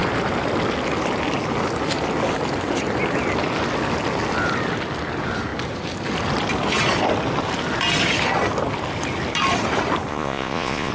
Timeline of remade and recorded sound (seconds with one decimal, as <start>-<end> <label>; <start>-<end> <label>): 0.0-10.1 recorded; 10.1-10.9 remade

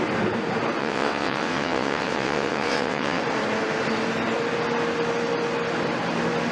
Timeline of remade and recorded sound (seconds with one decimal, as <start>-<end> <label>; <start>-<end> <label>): 0.0-0.8 recorded; 0.8-3.2 remade; 3.2-6.5 recorded

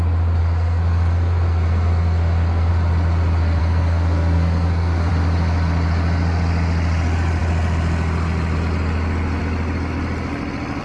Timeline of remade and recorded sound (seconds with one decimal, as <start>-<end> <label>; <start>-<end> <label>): 0.0-0.4 recorded; 0.4-2.7 remade; 2.7-3.6 recorded; 3.6-5.1 remade; 5.1-10.8 recorded

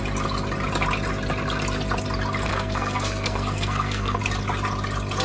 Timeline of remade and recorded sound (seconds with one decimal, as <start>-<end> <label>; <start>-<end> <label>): 0.0-2.5 recorded; 2.5-4.2 remade; 4.2-5.2 recorded

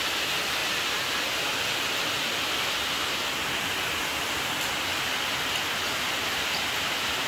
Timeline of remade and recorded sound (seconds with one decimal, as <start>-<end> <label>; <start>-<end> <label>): 0.0-7.3 recorded

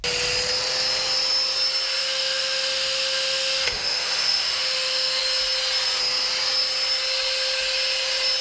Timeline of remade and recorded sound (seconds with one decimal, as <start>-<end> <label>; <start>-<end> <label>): 0.0-2.0 recorded; 2.0-5.2 remade; 5.2-8.4 recorded